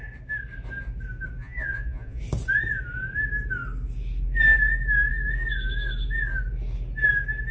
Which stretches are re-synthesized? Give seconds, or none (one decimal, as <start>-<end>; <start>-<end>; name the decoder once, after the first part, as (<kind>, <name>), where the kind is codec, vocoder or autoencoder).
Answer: 1.4-2.2 (vocoder, Vocos)